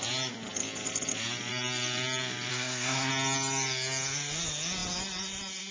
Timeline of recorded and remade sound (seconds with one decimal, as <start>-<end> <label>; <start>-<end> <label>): 0.0-2.5 recorded; 2.5-3.1 remade; 3.1-5.7 recorded